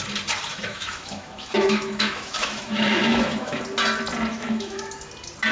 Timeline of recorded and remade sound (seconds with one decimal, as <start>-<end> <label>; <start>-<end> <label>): 0.0-0.5 recorded; 0.5-3.6 remade; 3.6-4.3 recorded; 4.3-4.8 remade; 4.8-5.5 recorded

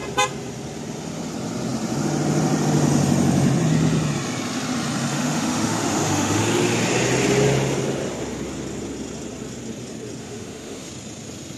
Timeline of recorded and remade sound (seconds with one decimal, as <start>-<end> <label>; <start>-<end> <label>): 0.0-5.1 recorded; 5.1-6.4 remade; 6.4-10.2 recorded; 10.2-10.9 remade; 10.9-11.6 recorded

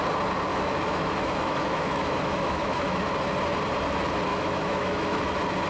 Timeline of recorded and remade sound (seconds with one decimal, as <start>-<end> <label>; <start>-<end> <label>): 0.0-0.5 recorded; 0.5-3.0 remade; 3.0-4.3 recorded; 4.3-5.2 remade; 5.2-5.7 recorded

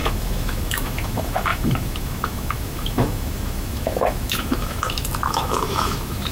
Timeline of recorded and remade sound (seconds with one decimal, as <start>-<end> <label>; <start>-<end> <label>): 0.0-6.3 remade

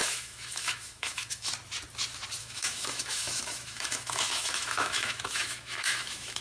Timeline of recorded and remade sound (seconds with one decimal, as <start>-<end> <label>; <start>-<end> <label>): 0.0-1.5 remade; 1.5-2.4 recorded; 2.4-6.4 remade